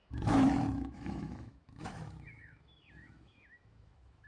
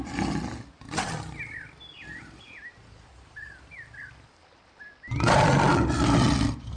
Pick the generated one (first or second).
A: first